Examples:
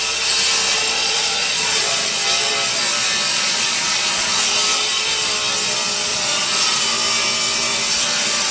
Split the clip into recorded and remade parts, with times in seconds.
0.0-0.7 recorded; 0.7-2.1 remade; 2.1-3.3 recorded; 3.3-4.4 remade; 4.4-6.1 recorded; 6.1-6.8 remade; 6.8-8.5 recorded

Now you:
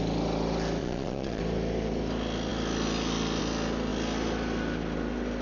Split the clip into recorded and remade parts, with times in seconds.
0.0-0.8 recorded; 0.8-1.4 remade; 1.4-5.4 recorded

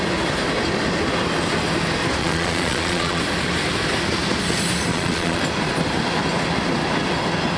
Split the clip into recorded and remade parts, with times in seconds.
0.0-2.2 recorded; 2.2-3.2 remade; 3.2-4.9 recorded; 4.9-5.4 remade; 5.4-7.6 recorded

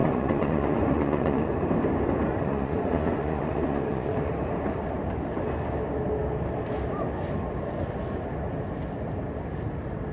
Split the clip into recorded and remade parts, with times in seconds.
0.0-1.5 remade; 1.5-2.3 recorded; 2.3-4.3 remade; 4.3-10.1 recorded

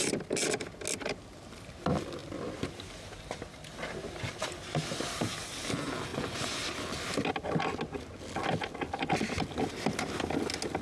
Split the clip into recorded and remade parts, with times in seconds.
0.0-6.1 recorded; 6.1-6.6 remade; 6.6-10.8 recorded